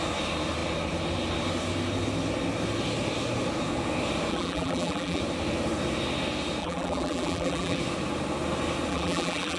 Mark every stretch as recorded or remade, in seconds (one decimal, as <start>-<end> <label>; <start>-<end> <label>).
0.0-4.3 recorded; 4.3-5.2 remade; 5.2-6.6 recorded; 6.6-7.8 remade; 7.8-8.9 recorded; 8.9-9.6 remade